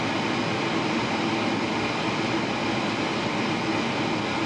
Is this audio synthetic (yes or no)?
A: no